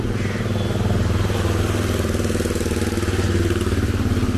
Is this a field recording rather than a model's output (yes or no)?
yes